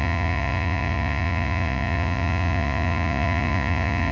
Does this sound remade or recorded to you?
remade